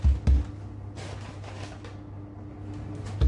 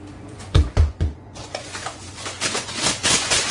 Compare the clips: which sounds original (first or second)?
first